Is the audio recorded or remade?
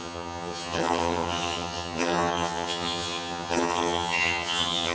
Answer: remade